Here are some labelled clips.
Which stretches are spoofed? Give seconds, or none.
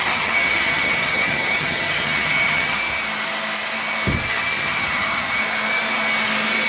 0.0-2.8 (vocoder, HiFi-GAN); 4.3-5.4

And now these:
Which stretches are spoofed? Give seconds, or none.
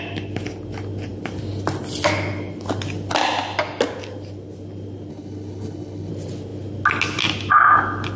5.1-6.1 (codec, HILCodec)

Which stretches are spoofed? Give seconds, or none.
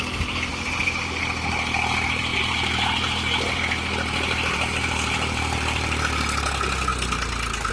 0.5-1.2 (vocoder, BigVGAN v2); 2.3-6.0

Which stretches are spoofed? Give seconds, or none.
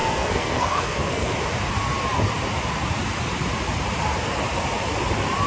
0.0-1.3 (codec, SNAC)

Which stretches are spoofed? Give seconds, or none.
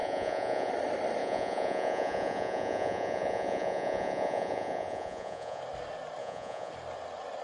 0.0-0.7 (vocoder, Vocos); 1.2-5.6; 6.2-6.7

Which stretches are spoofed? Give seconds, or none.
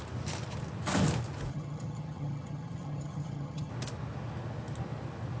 1.5-3.7 (vocoder, HiFi-GAN)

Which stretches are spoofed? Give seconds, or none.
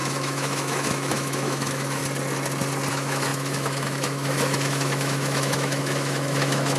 0.0-2.0 (autoencoder, DAC-VAE); 2.9-6.8